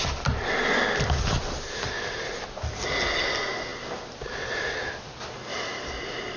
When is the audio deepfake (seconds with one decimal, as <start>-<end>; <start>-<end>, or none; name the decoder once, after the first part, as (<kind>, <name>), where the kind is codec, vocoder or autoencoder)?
3.7-4.9 (vocoder, BigVGAN v2)